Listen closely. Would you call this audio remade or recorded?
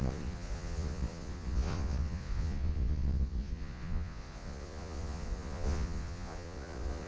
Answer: remade